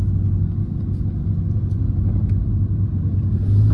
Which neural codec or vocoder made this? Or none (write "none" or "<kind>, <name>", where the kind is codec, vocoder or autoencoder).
none